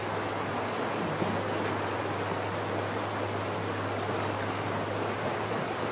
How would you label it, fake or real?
real